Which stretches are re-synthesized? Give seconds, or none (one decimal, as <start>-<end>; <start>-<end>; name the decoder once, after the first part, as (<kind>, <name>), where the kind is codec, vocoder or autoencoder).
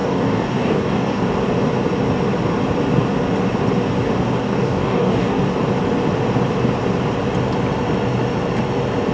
0.0-1.2 (codec, DAC); 4.4-5.4